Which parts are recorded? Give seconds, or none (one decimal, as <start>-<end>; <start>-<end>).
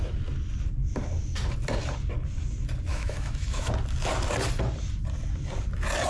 0.0-2.9; 3.7-6.1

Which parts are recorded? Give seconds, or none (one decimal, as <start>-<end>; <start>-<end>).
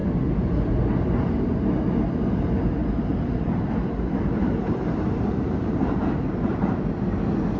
0.7-2.8; 3.6-4.4; 6.6-7.6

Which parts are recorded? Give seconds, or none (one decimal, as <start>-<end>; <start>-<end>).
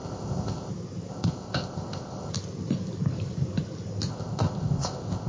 0.7-1.1; 2.3-4.1